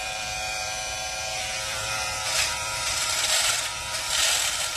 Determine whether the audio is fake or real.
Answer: fake